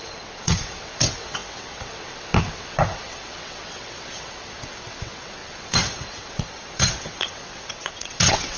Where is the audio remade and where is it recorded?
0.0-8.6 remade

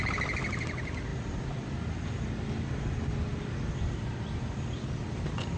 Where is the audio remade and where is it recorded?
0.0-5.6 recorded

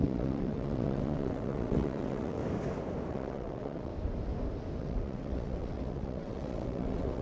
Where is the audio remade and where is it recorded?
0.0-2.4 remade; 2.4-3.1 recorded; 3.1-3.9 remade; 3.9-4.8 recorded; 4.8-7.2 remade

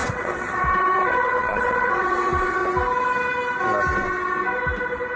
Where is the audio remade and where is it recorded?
0.0-2.6 remade; 2.6-5.2 recorded

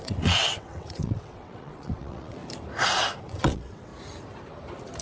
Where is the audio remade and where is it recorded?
0.0-2.4 remade; 2.4-3.2 recorded; 3.2-3.9 remade; 3.9-5.0 recorded

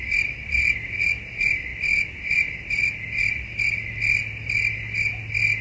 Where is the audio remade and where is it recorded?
0.0-5.6 recorded